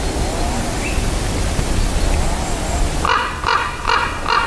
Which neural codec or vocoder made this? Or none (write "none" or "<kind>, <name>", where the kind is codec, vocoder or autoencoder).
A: none